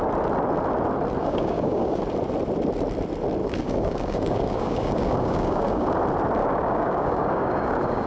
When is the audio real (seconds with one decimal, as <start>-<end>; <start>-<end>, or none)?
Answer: 0.0-1.2; 2.0-3.4; 5.9-6.4